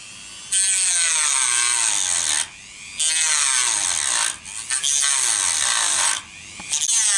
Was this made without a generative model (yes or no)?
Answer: yes